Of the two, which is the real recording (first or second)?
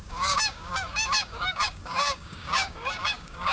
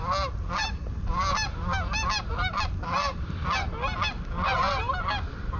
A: second